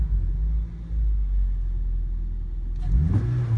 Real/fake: real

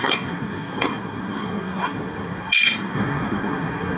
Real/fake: fake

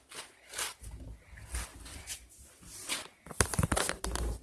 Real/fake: fake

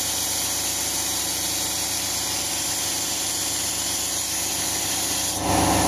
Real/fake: real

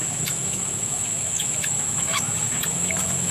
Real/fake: fake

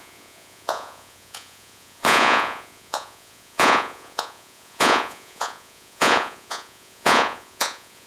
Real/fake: fake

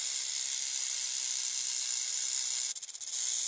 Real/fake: real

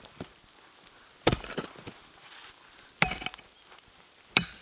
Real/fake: real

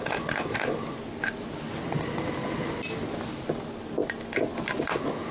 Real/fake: real